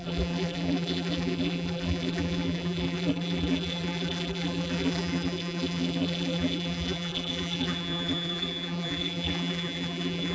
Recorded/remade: remade